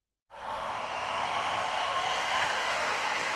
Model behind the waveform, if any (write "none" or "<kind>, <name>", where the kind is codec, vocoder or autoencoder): autoencoder, DAC-VAE